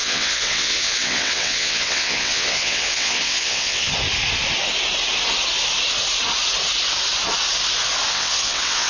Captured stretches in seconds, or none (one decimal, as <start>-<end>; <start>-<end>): 3.9-8.1